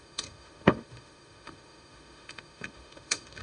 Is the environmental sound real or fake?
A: fake